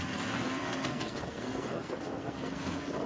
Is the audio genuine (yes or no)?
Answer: no